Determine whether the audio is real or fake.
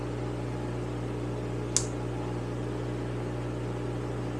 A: real